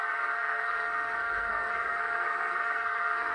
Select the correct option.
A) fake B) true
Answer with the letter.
A